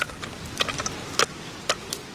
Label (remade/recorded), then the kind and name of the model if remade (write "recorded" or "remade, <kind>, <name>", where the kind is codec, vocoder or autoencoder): recorded